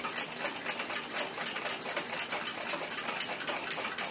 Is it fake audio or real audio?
real